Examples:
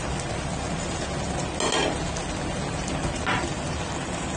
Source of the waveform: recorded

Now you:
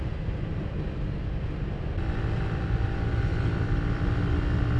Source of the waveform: recorded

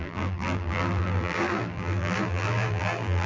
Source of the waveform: remade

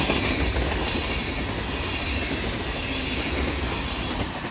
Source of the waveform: recorded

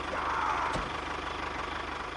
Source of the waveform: recorded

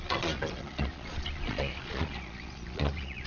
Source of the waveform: remade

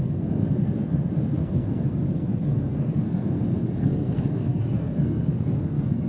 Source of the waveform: remade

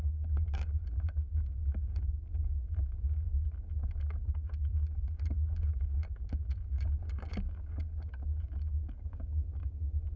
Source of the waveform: remade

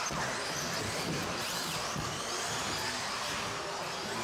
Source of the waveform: recorded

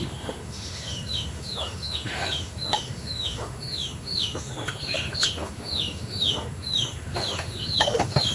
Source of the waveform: remade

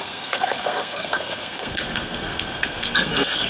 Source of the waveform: remade